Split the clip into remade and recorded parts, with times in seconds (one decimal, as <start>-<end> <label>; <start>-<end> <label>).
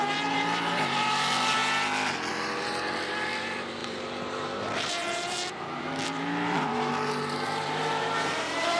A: 0.0-1.6 remade; 1.6-2.3 recorded; 2.3-8.8 remade